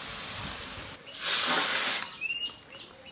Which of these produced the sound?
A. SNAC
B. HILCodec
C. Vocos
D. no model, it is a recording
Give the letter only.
D